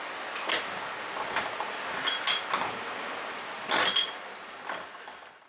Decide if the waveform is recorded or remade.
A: recorded